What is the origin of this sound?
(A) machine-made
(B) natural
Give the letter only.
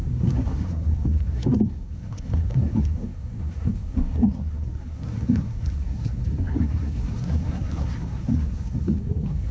A